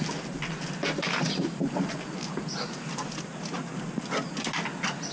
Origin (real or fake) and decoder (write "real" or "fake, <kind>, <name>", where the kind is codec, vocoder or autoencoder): real